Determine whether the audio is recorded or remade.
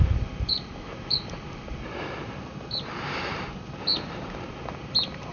remade